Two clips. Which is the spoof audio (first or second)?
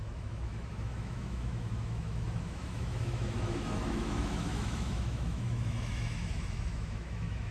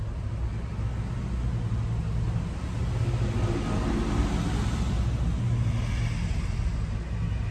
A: first